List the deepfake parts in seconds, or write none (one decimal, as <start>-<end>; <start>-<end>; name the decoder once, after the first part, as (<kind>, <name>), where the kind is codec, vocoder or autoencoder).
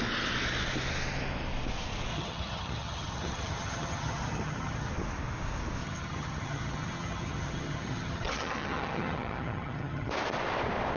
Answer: 2.1-4.9 (vocoder, HiFi-GAN); 5.8-10.1